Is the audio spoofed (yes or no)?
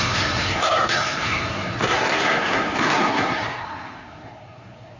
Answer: yes